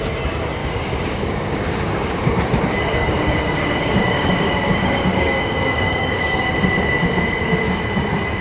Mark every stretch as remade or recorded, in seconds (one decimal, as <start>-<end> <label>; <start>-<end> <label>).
0.0-0.6 recorded; 0.6-2.4 remade; 2.4-3.0 recorded; 3.0-6.5 remade; 6.5-8.4 recorded